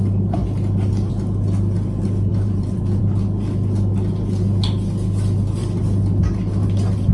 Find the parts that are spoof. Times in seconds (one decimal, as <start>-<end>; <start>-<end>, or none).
2.3-3.0